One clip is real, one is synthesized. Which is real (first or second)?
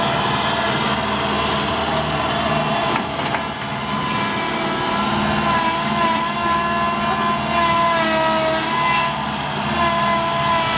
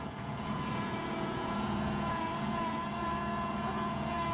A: first